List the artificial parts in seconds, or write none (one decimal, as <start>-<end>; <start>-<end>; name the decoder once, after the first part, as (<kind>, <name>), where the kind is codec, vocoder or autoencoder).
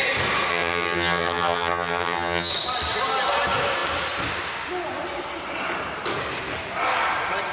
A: 0.5-2.5 (vocoder, HiFi-GAN)